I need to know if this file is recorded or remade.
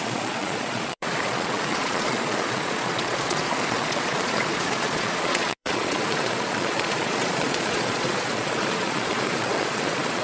remade